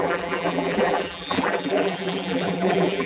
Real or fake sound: fake